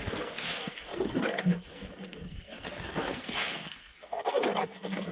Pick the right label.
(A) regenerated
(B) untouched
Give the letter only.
A